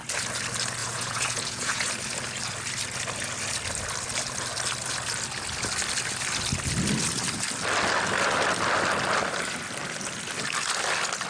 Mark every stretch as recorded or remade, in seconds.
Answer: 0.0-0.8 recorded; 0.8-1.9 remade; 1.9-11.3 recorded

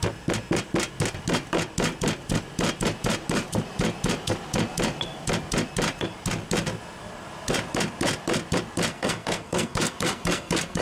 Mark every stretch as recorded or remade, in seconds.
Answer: 0.0-8.9 recorded; 8.9-10.8 remade

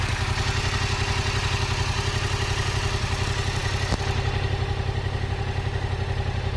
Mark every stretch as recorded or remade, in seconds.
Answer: 0.0-6.6 recorded

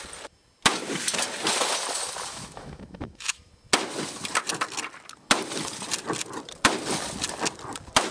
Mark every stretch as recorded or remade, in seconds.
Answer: 0.0-2.3 recorded; 2.3-3.5 remade; 3.5-8.1 recorded

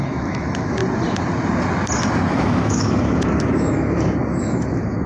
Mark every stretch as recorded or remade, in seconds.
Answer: 0.0-0.8 remade; 0.8-2.3 recorded; 2.3-5.1 remade

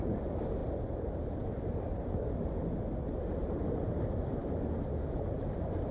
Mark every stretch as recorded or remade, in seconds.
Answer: 0.0-5.9 recorded

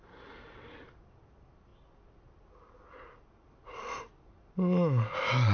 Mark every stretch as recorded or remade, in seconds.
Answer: 0.0-5.5 recorded

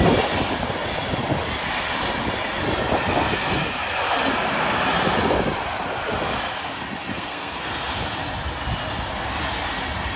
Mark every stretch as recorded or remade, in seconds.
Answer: 0.0-7.1 recorded; 7.1-7.7 remade; 7.7-10.2 recorded